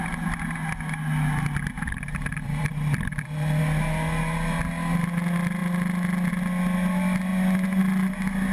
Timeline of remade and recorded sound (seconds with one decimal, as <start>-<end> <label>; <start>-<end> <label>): 0.0-2.3 recorded; 2.3-3.6 remade; 3.6-8.5 recorded